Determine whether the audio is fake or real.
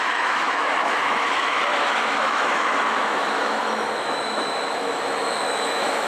fake